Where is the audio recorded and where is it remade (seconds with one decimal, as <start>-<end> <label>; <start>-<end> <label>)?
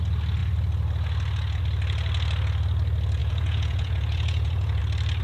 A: 0.0-3.2 recorded; 3.2-4.8 remade; 4.8-5.2 recorded